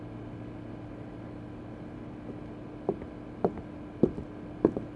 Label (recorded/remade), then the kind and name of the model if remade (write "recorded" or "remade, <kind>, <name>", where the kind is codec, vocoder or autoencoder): recorded